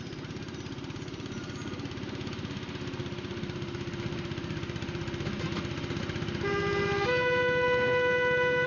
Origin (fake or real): real